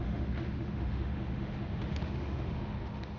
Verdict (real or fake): fake